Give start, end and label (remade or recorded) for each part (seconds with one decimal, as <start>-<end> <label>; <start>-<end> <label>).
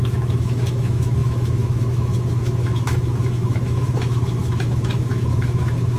0.0-6.0 remade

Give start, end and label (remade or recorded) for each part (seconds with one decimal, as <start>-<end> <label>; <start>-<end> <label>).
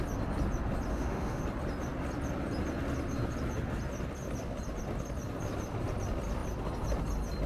0.0-0.9 recorded; 0.9-1.4 remade; 1.4-7.5 recorded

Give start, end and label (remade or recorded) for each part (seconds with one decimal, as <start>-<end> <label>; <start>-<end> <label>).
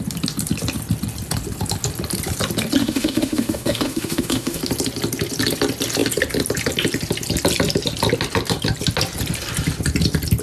0.0-2.8 recorded; 2.8-4.6 remade; 4.6-10.4 recorded